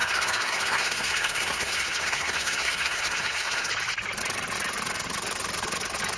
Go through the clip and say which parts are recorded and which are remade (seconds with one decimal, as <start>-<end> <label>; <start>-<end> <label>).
0.0-3.7 remade; 3.7-6.2 recorded